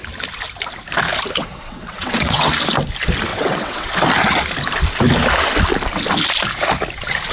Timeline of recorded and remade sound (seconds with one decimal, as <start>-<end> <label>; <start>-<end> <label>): 0.0-1.4 recorded; 1.4-2.5 remade; 2.5-3.3 recorded; 3.3-3.9 remade; 3.9-7.3 recorded